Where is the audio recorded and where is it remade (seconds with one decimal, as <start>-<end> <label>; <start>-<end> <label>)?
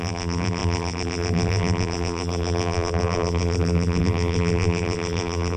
0.0-5.6 remade